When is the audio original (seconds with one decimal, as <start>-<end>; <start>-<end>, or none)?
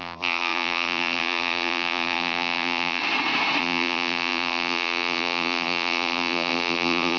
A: 3.0-3.6